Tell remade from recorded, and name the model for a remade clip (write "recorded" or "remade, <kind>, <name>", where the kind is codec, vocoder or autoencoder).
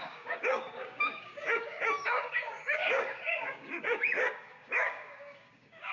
remade, codec, DAC